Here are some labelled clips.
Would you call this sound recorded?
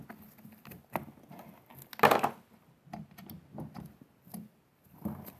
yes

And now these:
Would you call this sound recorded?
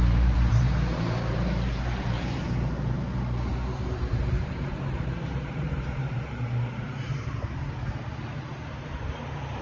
no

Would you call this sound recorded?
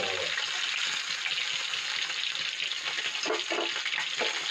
yes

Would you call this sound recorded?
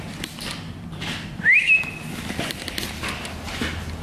yes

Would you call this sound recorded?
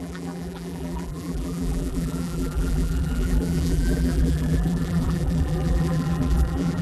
no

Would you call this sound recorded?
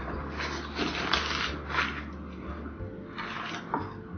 yes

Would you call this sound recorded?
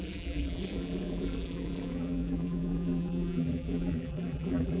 no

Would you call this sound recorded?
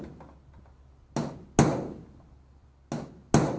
yes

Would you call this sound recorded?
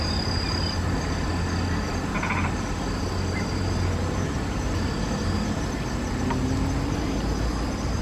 yes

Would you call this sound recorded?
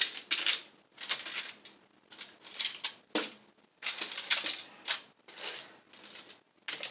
yes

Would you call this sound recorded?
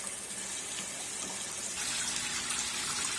yes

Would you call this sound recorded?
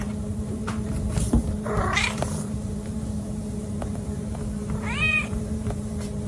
no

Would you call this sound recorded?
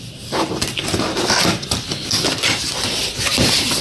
yes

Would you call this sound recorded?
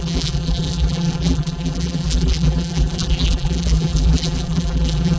no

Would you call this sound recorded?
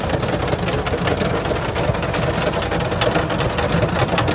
yes